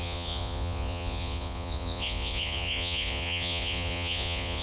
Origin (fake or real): fake